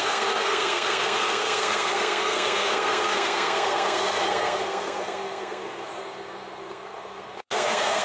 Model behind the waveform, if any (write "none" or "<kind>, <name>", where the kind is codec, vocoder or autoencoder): codec, SNAC